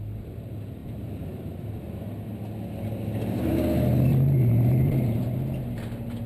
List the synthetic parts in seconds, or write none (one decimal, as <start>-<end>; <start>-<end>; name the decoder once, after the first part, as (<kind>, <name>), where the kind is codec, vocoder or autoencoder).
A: 0.8-1.8 (vocoder, BigVGAN v2); 4.1-5.2